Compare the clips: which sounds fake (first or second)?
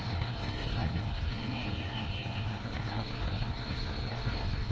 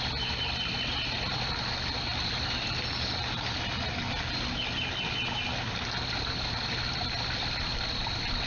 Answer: first